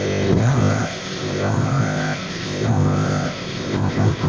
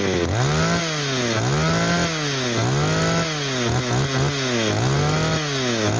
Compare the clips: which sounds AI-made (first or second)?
first